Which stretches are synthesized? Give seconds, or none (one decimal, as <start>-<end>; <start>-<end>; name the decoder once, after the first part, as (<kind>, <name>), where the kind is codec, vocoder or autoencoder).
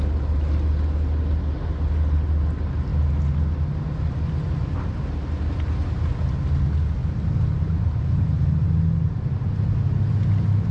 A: 7.0-8.7 (vocoder, BigVGAN v2)